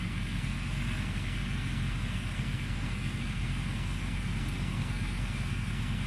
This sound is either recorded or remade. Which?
remade